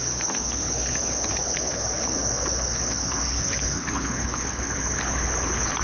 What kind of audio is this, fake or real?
fake